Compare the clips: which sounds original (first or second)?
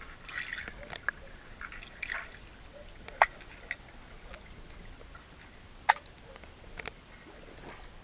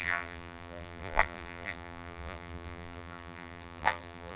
first